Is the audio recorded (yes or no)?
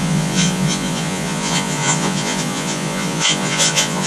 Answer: no